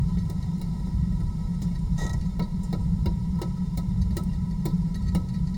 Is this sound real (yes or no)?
no